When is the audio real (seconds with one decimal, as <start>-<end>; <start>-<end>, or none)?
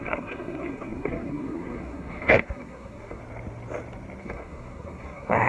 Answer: 3.2-4.2